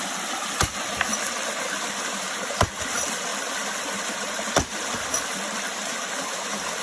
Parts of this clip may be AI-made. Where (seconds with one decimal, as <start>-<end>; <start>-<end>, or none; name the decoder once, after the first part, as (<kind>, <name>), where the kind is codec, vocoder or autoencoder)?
none